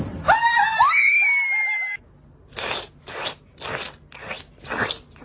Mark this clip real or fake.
real